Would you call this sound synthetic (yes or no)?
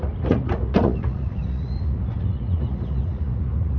yes